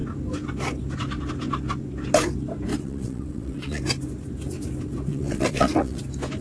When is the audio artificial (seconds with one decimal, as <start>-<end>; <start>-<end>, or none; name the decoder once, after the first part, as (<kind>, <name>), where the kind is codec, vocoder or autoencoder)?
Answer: 2.7-3.8 (vocoder, WaveNeXt); 5.1-6.0

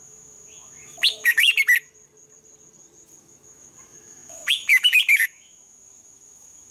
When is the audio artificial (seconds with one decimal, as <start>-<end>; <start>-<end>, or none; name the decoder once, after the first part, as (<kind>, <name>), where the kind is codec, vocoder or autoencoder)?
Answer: 0.0-1.5 (autoencoder, DAC-VAE); 3.2-6.7

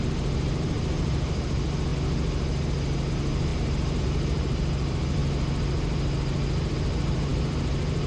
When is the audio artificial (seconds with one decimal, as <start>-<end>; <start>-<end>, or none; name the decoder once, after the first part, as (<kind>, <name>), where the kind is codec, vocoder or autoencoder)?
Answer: 0.0-1.9 (vocoder, BigVGAN v2); 3.1-5.2; 6.7-8.1

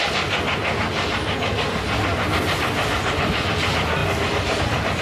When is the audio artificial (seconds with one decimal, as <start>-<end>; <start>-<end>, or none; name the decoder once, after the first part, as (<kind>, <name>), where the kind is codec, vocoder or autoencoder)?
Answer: none